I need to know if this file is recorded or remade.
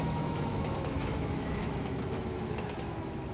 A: remade